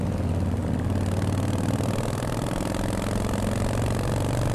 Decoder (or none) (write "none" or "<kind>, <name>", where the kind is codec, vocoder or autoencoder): none